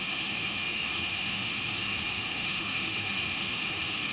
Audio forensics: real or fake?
fake